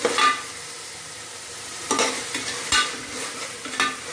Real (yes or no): no